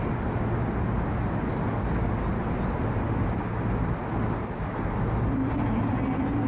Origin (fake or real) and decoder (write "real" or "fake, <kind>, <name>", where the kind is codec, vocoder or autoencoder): real